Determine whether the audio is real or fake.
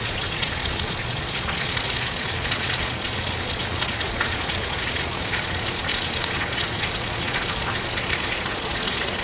fake